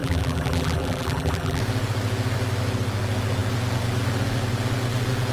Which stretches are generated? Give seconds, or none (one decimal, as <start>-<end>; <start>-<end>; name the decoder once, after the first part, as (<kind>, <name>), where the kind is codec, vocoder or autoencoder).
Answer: 0.0-1.6 (vocoder, BigVGAN v2)